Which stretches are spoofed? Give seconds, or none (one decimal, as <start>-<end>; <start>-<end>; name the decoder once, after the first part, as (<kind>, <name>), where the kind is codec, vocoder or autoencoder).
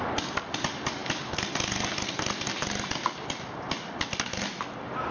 none